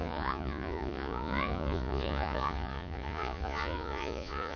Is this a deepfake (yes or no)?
yes